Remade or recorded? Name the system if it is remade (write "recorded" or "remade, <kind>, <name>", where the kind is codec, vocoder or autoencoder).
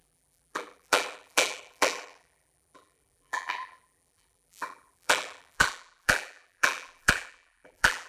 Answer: remade, vocoder, BigVGAN v2